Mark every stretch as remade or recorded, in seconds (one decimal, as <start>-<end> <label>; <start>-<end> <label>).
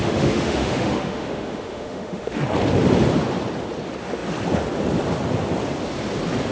0.0-2.4 remade; 2.4-6.5 recorded